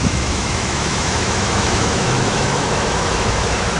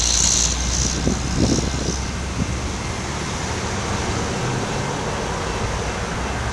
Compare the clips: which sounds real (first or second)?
second